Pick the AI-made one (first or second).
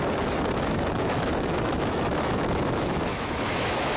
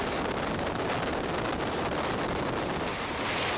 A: first